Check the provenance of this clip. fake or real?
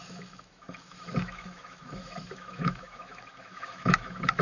fake